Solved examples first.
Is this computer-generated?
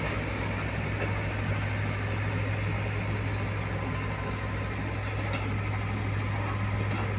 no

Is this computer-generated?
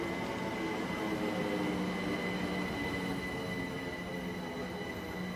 no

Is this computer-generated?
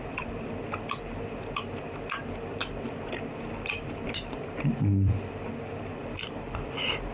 yes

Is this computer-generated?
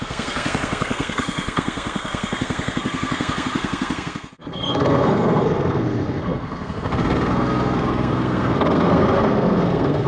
yes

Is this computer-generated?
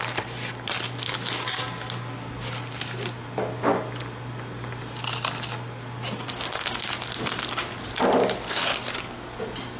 no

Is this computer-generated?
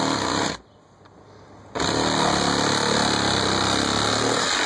no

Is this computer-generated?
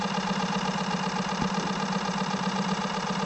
yes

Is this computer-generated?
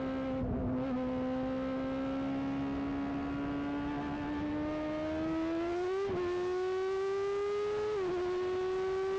no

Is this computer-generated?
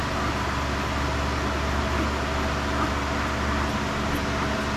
no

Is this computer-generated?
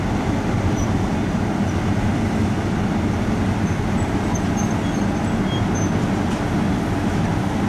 no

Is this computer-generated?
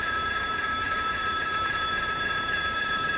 yes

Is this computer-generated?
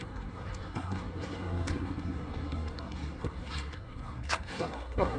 yes